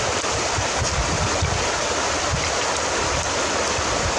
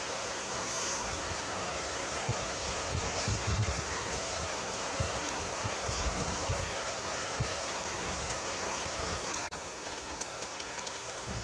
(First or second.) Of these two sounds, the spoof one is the second